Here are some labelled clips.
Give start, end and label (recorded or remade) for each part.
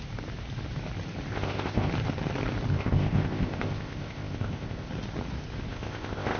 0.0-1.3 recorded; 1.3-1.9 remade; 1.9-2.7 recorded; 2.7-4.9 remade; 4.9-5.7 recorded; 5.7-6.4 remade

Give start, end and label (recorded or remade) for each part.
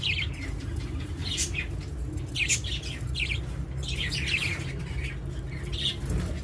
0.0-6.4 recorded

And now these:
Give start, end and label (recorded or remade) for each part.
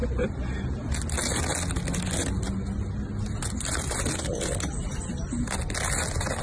0.0-6.4 recorded